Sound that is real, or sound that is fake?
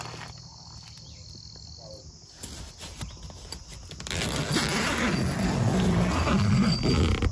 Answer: real